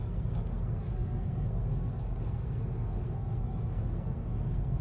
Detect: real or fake fake